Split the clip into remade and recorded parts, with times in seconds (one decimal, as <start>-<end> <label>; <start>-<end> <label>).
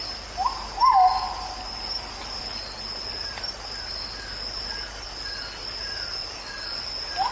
0.0-7.3 recorded